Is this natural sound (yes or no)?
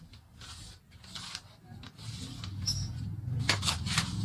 yes